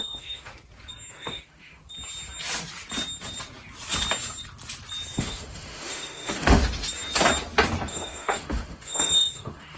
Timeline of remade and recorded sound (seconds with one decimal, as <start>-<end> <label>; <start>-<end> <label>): 0.0-0.5 remade; 0.5-1.1 recorded; 1.1-1.8 remade; 1.8-5.2 recorded; 5.2-6.6 remade; 6.6-7.9 recorded; 7.9-9.8 remade

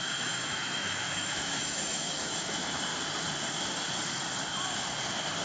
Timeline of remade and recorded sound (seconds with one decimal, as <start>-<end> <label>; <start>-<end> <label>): 0.0-2.9 remade; 2.9-5.4 recorded

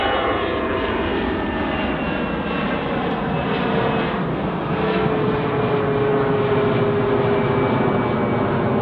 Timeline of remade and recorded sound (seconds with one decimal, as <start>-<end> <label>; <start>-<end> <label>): 0.0-4.3 recorded; 4.3-5.1 remade; 5.1-8.8 recorded

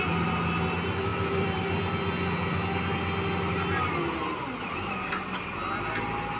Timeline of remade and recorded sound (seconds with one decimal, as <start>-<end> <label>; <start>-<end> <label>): 0.0-1.1 recorded; 1.1-1.6 remade; 1.6-6.4 recorded

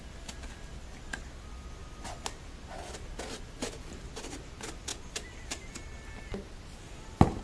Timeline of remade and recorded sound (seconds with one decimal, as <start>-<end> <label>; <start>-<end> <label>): 0.0-7.4 recorded

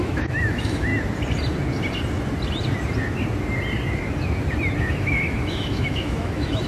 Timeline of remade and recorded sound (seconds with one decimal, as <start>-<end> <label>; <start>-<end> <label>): 0.0-0.9 remade; 0.9-4.8 recorded; 4.8-6.7 remade